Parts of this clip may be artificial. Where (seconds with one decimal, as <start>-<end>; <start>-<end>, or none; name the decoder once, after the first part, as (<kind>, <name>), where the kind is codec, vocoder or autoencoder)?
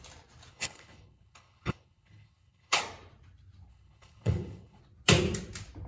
0.5-2.8 (codec, HILCodec); 3.7-4.8